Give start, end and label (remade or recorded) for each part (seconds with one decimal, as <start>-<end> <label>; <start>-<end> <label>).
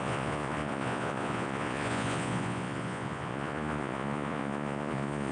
0.0-5.3 remade